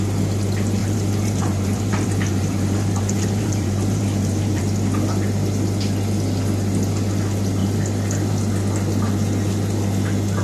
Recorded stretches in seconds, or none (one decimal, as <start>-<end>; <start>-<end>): 0.0-0.8; 4.6-10.4

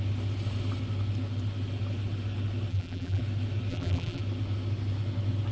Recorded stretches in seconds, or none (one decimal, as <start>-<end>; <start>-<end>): 0.0-2.7; 3.2-3.7; 4.2-5.5

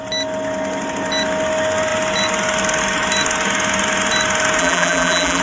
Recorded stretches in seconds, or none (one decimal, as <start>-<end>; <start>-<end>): 0.0-4.6

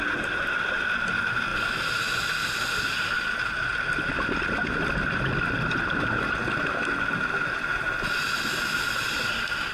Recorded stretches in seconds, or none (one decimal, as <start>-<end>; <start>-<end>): 0.0-2.4; 2.9-3.7; 4.9-9.7

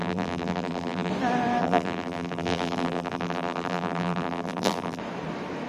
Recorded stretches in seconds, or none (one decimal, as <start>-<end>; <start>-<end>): 1.1-1.6; 5.0-5.7